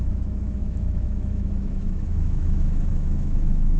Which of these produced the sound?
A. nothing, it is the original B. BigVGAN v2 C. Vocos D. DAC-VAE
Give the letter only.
D